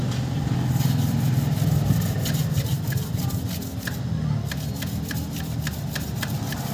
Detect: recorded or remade recorded